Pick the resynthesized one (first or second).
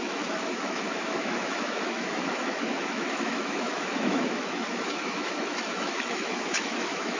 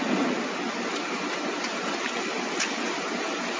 first